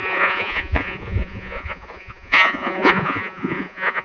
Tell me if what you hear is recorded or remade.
remade